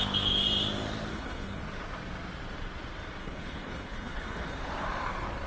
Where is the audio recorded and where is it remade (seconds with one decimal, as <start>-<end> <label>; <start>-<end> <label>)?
0.0-1.1 recorded; 1.1-1.6 remade; 1.6-3.2 recorded; 3.2-4.7 remade; 4.7-5.5 recorded